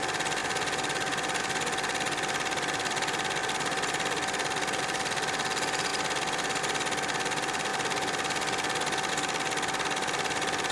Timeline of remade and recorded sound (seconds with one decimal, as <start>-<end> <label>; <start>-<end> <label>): 0.0-10.7 recorded